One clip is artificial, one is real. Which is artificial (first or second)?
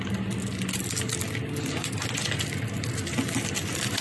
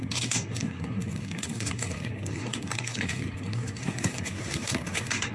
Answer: second